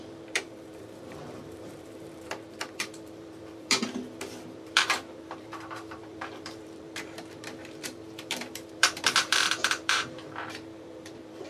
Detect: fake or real fake